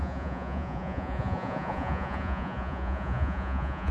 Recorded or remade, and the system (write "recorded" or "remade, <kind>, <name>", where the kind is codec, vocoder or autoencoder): remade, vocoder, Vocos